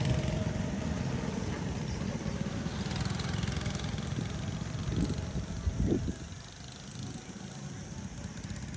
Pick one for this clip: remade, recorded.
recorded